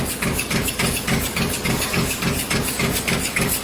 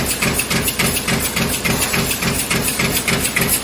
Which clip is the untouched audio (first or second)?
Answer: second